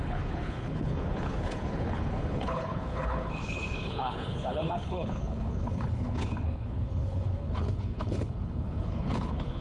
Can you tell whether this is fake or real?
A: fake